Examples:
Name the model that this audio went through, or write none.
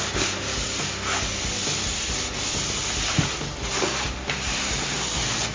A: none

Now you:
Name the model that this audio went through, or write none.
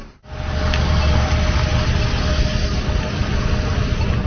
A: none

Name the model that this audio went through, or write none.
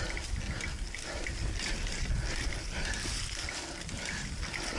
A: none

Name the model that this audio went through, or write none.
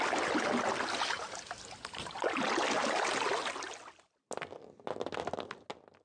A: none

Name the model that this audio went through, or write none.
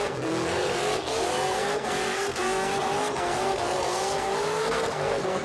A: codec, SNAC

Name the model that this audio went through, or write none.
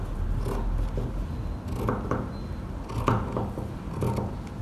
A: none